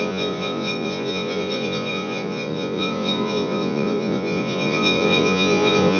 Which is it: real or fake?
fake